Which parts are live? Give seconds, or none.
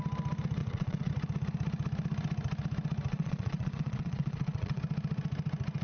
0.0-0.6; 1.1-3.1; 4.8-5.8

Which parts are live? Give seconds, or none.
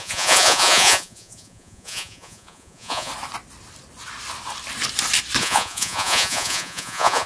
3.1-5.4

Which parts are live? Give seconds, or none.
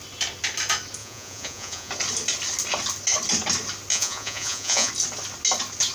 0.0-1.0; 1.9-3.9; 4.9-5.9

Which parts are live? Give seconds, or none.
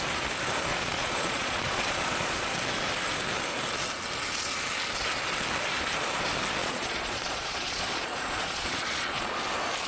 0.0-0.7; 2.5-6.6; 9.4-9.9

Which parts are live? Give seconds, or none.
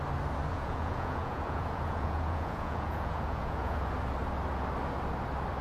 0.0-0.5; 3.9-5.6